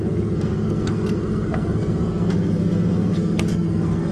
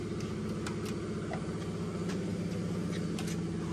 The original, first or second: second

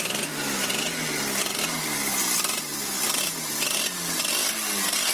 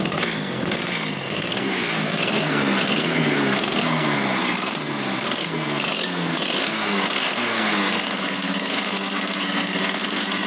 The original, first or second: first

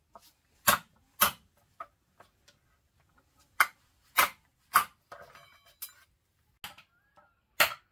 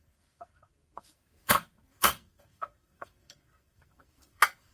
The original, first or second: first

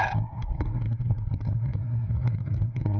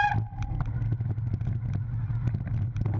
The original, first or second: second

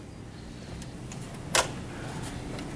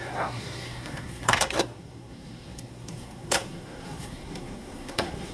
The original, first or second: first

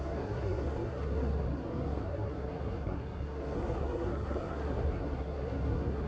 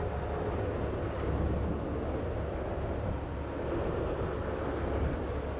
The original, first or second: second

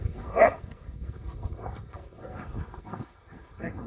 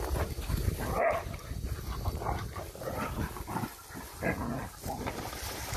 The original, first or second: second